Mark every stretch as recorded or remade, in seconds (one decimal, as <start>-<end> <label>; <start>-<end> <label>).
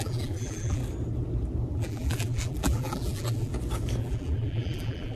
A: 0.0-0.8 remade; 0.8-1.7 recorded; 1.7-3.5 remade; 3.5-4.0 recorded; 4.0-5.2 remade